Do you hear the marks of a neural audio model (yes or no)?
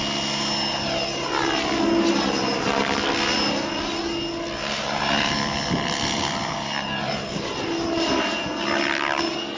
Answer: no